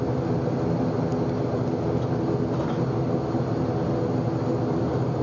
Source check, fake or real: real